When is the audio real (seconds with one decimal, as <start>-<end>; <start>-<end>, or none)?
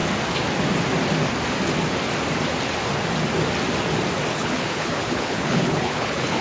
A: 0.0-4.3